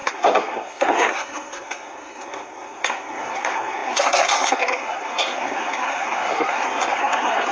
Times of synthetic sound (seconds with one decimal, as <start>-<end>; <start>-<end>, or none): 0.0-7.5